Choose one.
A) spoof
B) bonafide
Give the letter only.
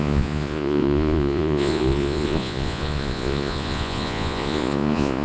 A